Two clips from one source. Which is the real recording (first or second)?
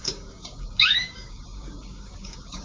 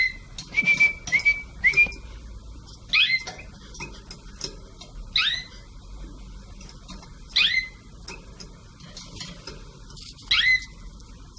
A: second